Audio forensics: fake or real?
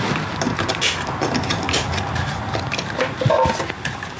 real